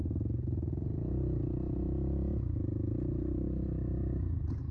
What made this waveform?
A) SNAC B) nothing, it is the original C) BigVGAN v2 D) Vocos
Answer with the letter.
B